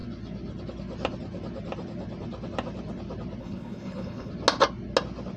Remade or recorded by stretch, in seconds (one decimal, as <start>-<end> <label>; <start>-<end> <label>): 0.0-3.4 recorded; 3.4-4.3 remade; 4.3-5.4 recorded